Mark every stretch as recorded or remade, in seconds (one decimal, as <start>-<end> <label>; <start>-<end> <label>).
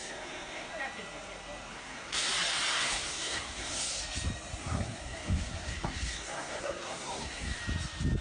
0.0-0.7 remade; 0.7-1.7 recorded; 1.7-2.3 remade; 2.3-2.7 recorded; 2.7-4.0 remade; 4.0-4.6 recorded; 4.6-7.6 remade; 7.6-8.2 recorded